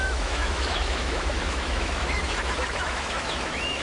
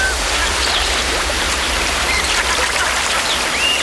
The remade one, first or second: first